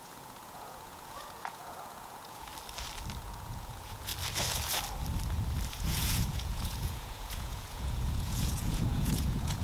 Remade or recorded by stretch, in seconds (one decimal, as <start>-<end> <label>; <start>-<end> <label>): 0.0-2.5 remade; 2.5-3.2 recorded; 3.2-4.1 remade; 4.1-5.7 recorded; 5.7-9.6 remade